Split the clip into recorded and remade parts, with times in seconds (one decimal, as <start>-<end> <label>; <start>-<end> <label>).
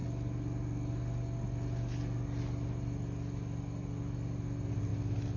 0.0-5.4 recorded